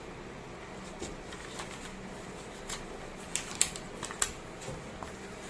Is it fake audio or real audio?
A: real